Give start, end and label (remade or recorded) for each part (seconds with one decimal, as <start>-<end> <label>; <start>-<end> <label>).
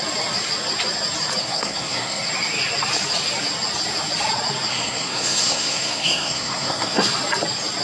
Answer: 0.0-1.4 recorded; 1.4-2.3 remade; 2.3-4.7 recorded; 4.7-7.1 remade; 7.1-7.8 recorded